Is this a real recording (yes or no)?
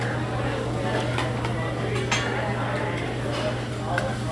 yes